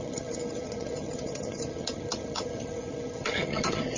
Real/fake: fake